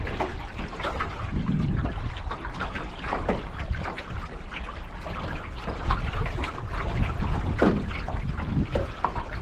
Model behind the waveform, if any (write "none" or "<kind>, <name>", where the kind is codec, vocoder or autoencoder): none